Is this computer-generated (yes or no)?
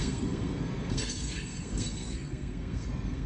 yes